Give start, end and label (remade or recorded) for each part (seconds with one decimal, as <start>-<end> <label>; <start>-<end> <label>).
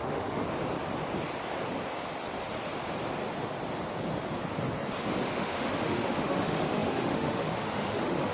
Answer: 0.0-0.4 remade; 0.4-5.3 recorded; 5.3-8.3 remade